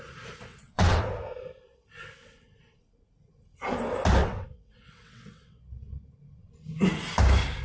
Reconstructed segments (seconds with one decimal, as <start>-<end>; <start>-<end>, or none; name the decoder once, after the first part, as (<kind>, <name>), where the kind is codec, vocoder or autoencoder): 0.5-1.1 (vocoder, WaveNeXt); 4.2-5.6